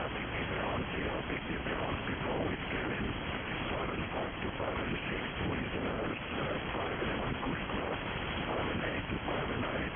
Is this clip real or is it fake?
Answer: fake